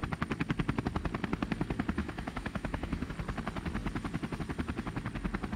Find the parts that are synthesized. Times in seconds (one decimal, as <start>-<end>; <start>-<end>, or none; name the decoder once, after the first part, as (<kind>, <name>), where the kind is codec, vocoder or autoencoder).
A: 2.0-3.1 (autoencoder, DAC-VAE)